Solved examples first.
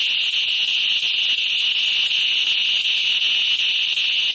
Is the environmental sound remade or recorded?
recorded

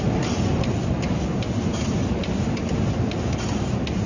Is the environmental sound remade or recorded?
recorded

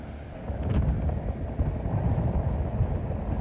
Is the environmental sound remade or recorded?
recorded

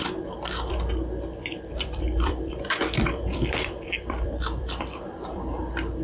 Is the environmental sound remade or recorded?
remade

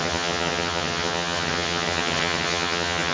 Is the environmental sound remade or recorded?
remade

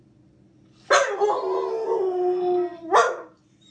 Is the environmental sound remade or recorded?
recorded